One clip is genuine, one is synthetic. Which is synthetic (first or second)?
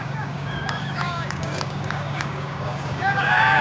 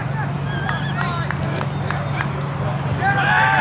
first